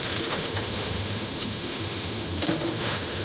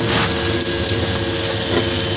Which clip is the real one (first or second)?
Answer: second